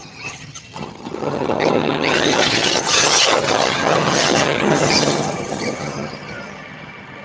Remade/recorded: remade